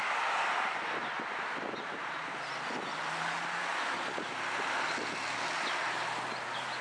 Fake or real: real